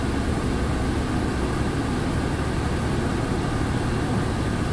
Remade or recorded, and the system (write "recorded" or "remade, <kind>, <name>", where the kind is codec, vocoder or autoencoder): recorded